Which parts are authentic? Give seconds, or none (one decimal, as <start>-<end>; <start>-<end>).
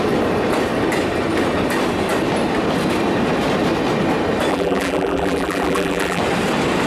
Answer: 0.0-4.5; 6.2-6.9